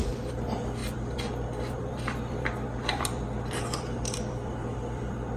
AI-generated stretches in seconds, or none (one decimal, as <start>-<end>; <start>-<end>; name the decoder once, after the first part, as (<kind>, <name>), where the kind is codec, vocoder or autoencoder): 0.0-5.4 (vocoder, BigVGAN v2)